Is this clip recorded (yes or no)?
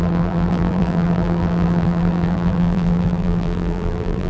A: no